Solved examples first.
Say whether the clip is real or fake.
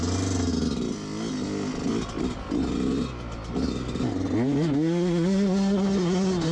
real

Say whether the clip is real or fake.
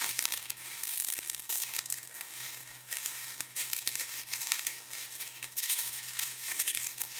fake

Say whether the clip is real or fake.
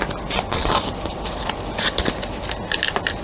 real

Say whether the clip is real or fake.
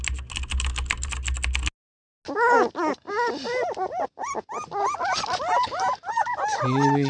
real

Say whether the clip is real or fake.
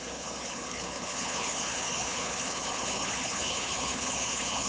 fake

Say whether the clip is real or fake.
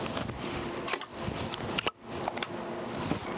real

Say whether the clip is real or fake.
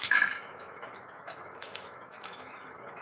fake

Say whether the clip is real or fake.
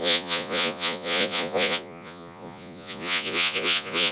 fake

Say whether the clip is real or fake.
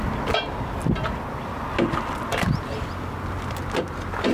real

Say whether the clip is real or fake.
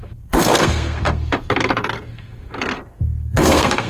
fake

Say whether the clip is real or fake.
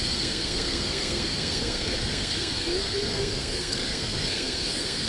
fake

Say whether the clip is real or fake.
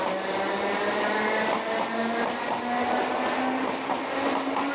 real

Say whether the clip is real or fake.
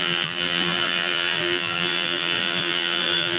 fake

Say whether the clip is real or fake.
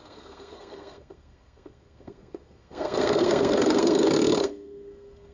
fake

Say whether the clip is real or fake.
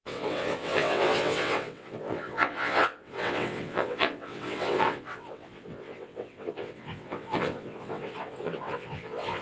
fake